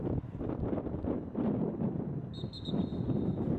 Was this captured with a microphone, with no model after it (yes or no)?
yes